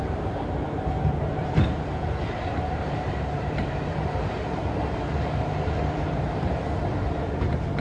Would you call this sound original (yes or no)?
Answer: no